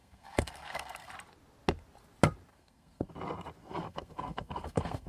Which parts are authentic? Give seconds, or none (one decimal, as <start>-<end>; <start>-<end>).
1.1-2.5; 3.1-3.6